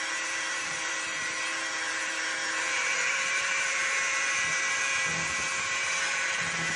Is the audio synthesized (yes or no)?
yes